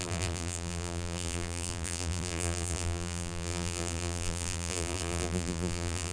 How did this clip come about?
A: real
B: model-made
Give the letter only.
B